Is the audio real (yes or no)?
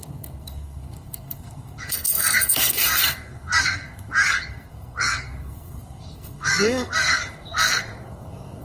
no